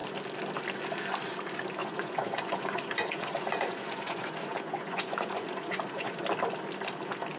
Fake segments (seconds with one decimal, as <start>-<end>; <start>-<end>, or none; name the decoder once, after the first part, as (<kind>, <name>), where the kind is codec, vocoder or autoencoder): 1.8-6.2 (vocoder, Vocos)